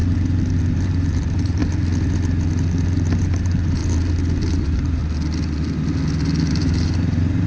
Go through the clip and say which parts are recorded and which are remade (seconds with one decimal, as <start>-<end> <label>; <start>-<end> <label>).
0.0-0.6 recorded; 0.6-1.6 remade; 1.6-3.2 recorded; 3.2-3.8 remade; 3.8-4.5 recorded; 4.5-5.0 remade; 5.0-6.5 recorded; 6.5-7.5 remade